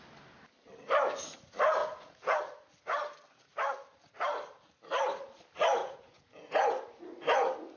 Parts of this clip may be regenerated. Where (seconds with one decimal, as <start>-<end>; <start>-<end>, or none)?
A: 1.8-2.4; 5.8-6.5

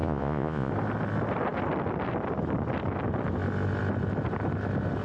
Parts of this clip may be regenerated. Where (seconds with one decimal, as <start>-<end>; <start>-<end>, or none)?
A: 0.0-0.7

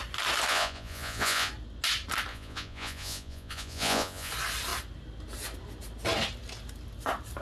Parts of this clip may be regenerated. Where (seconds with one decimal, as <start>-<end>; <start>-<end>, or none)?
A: 0.5-1.5; 2.3-4.3

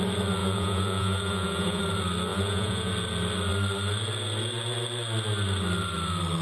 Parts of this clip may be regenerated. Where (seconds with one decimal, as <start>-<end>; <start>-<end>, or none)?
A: 0.4-1.8; 2.3-2.9

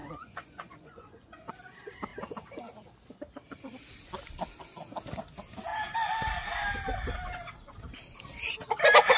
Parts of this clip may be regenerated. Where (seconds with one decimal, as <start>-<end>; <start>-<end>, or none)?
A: 0.0-1.5

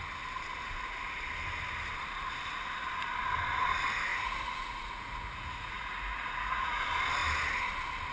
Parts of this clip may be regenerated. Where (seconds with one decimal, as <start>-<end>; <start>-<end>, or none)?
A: 4.1-6.8

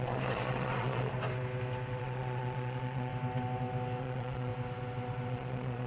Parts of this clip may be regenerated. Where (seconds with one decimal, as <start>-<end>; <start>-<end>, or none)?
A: 0.0-1.1; 2.0-3.1; 4.0-4.5; 5.3-5.9

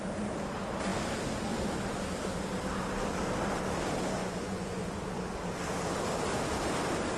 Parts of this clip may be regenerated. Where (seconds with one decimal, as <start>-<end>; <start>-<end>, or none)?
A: 4.2-5.0